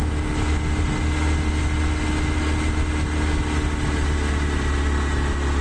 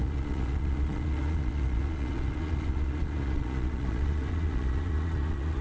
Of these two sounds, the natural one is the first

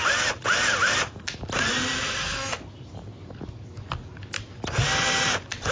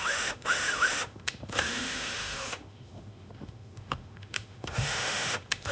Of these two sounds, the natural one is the first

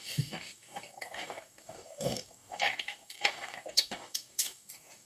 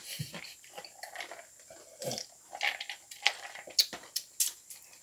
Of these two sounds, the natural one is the second